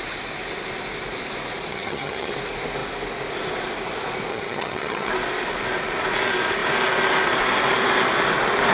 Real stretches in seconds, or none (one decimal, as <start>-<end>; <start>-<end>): 0.0-1.7; 2.3-4.3; 5.1-8.7